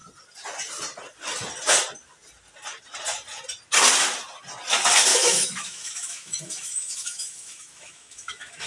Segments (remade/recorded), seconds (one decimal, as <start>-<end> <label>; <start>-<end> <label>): 0.0-5.1 recorded; 5.1-8.7 remade